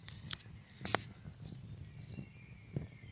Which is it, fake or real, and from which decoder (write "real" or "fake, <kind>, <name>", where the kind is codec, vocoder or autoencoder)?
real